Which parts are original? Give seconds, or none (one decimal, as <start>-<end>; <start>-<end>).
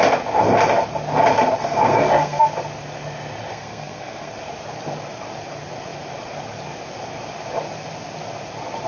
0.0-1.6; 2.4-3.5; 4.3-8.9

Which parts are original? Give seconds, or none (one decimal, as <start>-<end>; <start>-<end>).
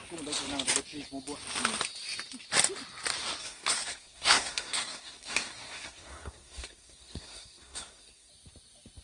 0.0-3.4; 8.3-9.0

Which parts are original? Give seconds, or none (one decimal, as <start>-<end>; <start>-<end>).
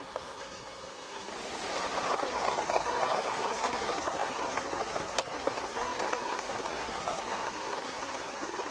1.3-2.1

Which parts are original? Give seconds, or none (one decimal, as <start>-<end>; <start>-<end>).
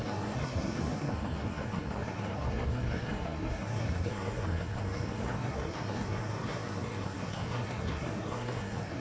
none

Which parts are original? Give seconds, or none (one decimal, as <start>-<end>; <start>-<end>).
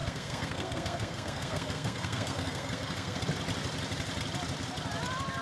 3.2-5.4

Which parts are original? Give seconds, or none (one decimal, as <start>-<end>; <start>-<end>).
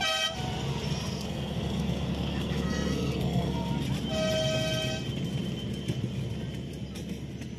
0.0-1.1; 3.7-7.6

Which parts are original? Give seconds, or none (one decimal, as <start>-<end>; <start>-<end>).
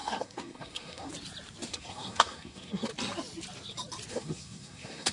1.1-1.7; 2.9-4.1